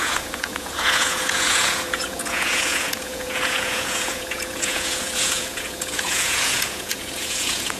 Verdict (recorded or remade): remade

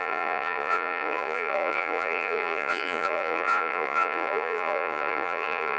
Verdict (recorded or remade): remade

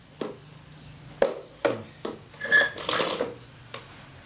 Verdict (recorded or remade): recorded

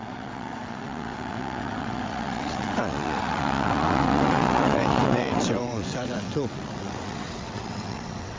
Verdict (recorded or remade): remade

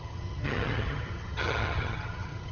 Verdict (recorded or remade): remade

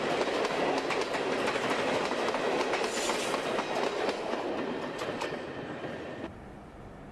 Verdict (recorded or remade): recorded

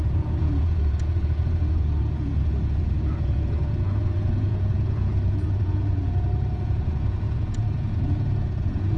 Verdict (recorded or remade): remade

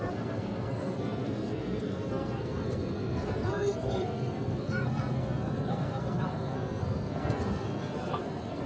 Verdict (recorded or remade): remade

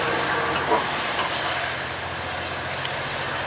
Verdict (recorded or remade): recorded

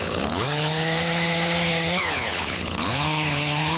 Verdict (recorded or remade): remade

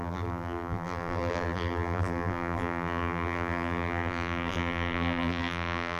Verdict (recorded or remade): remade